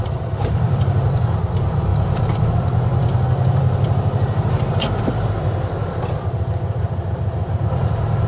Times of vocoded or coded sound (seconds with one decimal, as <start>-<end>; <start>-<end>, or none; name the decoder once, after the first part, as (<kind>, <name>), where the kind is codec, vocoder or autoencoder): 0.0-8.3 (vocoder, BigVGAN v2)

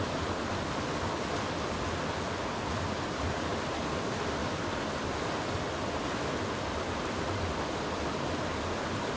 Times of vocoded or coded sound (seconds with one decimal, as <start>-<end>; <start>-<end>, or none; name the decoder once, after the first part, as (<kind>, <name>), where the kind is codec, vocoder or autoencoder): 3.5-4.0 (vocoder, BigVGAN v2)

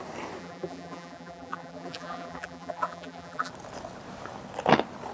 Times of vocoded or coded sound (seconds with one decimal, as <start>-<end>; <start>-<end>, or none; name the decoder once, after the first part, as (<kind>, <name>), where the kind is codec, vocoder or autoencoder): 0.4-3.5 (vocoder, BigVGAN v2)

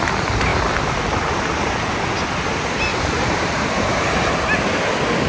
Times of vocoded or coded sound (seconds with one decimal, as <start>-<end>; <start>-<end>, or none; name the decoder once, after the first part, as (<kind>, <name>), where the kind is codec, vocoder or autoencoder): 0.5-1.7 (vocoder, BigVGAN v2); 2.9-4.8

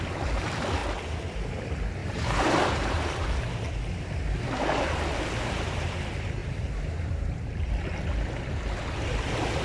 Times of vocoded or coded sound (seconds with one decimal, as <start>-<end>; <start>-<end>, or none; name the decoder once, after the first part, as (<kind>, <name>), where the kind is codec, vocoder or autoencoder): 2.0-3.4 (vocoder, BigVGAN v2); 6.4-7.7

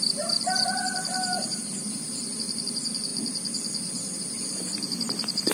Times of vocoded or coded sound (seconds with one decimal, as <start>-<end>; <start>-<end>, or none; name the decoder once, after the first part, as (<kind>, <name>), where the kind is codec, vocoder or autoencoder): 0.0-5.5 (vocoder, BigVGAN v2)

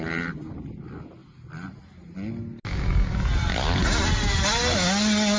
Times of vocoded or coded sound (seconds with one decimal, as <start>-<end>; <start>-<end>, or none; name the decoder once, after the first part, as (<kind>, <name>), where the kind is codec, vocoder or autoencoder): none

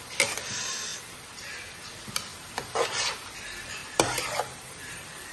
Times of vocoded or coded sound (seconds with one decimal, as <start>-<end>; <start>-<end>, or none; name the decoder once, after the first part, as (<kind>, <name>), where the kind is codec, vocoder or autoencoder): 2.3-3.1 (vocoder, BigVGAN v2); 3.8-5.3